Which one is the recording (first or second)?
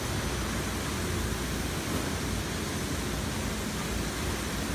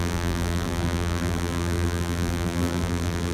first